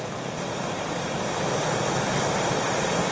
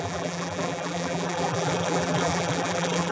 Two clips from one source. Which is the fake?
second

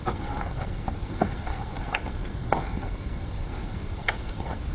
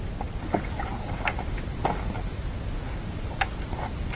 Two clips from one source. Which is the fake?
first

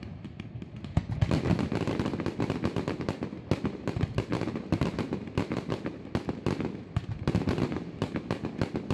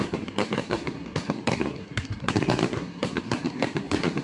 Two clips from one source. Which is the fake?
second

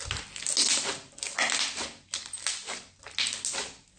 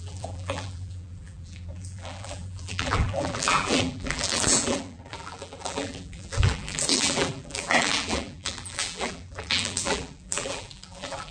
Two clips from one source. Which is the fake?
second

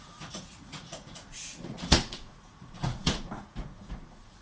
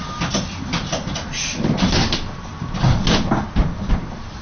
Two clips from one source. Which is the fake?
first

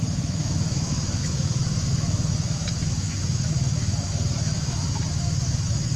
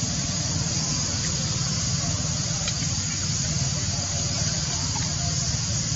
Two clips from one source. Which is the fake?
first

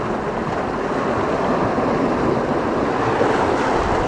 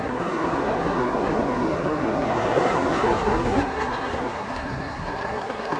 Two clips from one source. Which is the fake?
second